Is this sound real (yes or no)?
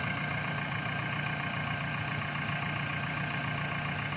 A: yes